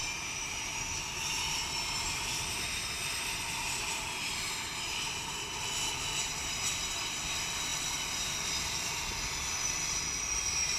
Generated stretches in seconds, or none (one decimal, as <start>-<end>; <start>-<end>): none